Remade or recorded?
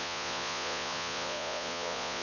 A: remade